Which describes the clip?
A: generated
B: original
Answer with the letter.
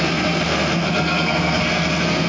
A